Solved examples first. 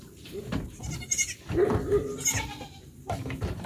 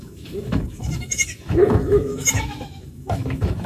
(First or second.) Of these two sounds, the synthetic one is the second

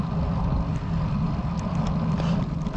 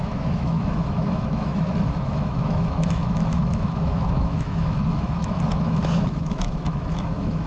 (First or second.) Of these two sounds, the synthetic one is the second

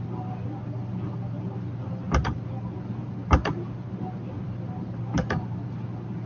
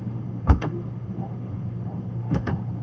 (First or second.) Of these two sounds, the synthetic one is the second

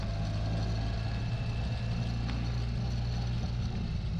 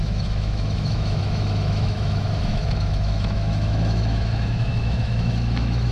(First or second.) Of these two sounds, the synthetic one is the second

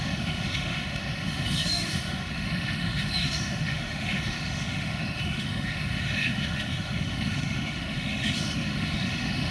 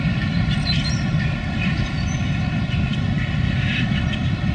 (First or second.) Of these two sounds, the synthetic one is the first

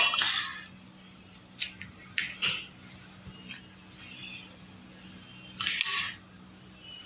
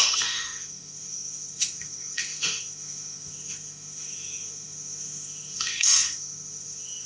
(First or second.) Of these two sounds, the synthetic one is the second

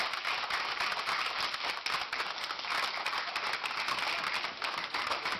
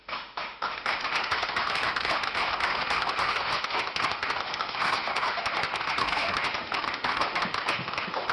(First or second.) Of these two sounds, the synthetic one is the second